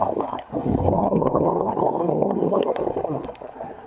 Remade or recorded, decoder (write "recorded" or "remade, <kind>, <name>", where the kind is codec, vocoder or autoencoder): remade, codec, SNAC